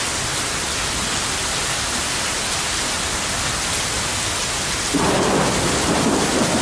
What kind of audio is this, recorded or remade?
recorded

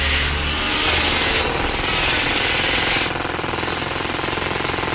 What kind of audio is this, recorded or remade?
recorded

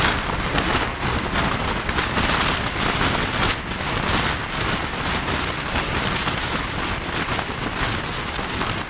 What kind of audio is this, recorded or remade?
recorded